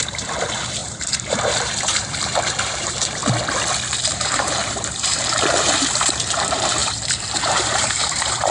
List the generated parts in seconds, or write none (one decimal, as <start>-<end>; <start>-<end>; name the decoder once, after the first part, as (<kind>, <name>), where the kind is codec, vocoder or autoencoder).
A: 0.0-3.2 (vocoder, BigVGAN v2); 4.1-8.5